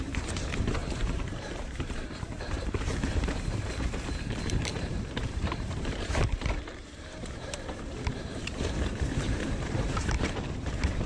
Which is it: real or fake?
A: fake